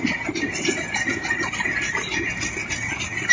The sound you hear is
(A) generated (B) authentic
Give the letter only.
B